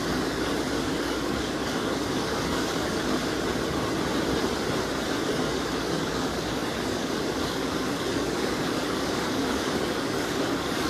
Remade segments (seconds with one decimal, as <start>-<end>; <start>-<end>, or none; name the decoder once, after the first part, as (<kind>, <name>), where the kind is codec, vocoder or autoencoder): 0.0-3.2 (codec, DAC); 5.2-10.9